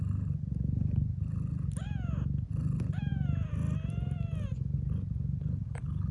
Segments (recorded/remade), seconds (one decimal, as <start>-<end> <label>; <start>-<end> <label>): 0.0-6.1 recorded